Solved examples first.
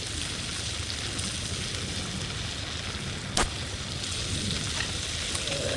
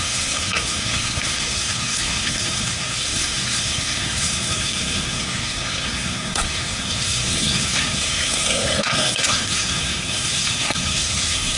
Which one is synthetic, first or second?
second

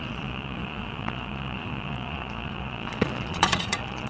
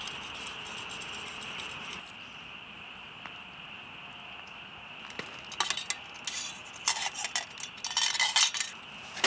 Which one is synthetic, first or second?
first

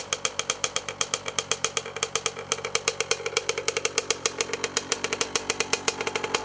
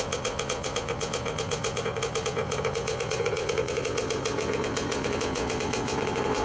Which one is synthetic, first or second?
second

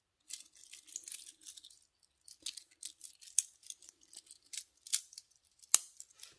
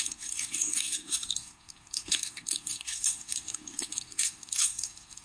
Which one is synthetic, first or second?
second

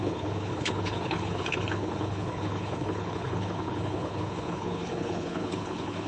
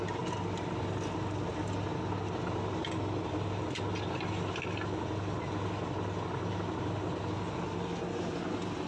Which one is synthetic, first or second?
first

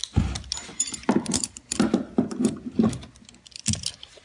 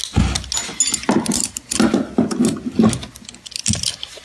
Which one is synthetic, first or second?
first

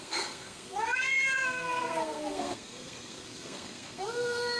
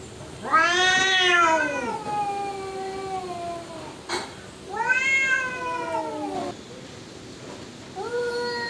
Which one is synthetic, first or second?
first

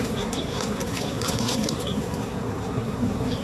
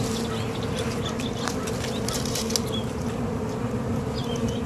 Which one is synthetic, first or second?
first